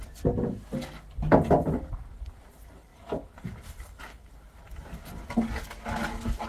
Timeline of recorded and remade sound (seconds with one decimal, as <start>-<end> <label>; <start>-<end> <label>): 0.0-6.5 recorded

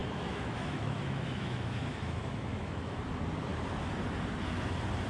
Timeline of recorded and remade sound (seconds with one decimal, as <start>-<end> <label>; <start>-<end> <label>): 0.0-3.0 remade; 3.0-5.1 recorded